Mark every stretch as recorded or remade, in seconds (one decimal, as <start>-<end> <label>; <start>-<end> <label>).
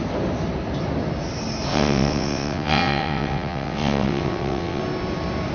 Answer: 0.0-1.7 recorded; 1.7-4.8 remade; 4.8-5.5 recorded